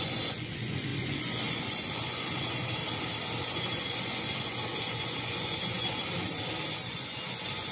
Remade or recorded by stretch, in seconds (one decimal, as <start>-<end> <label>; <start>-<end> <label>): 0.0-2.8 remade; 2.8-3.4 recorded; 3.4-6.0 remade; 6.0-6.9 recorded; 6.9-7.7 remade